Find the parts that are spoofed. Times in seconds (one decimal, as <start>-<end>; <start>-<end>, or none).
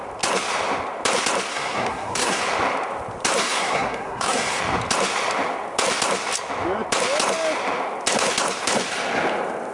1.5-2.4; 3.4-4.6